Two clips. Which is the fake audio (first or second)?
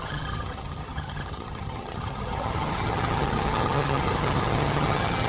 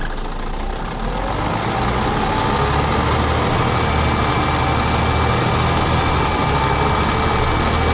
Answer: first